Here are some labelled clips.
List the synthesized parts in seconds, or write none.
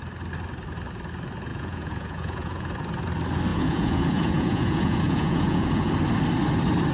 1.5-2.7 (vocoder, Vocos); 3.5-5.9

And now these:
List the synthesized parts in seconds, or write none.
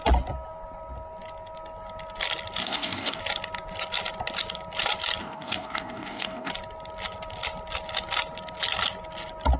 2.6-3.2 (codec, DAC); 5.2-6.5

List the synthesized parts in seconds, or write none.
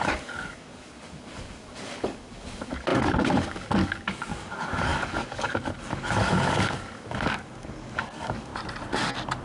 0.0-8.5 (codec, DAC)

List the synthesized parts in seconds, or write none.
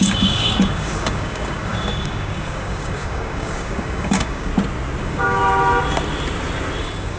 0.0-4.5 (codec, DAC); 5.0-5.4; 6.8-7.2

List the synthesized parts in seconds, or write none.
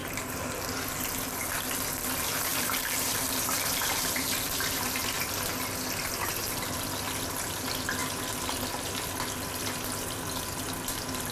0.0-0.6 (vocoder, BigVGAN v2); 2.5-5.0